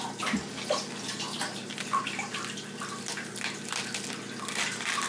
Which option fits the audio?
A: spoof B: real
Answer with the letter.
B